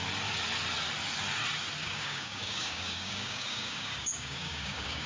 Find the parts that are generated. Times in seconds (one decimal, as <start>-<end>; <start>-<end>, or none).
1.8-5.1